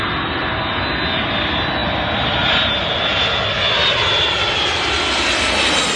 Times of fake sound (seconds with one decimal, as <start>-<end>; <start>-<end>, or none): none